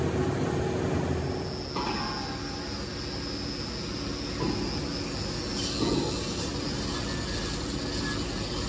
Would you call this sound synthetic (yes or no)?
no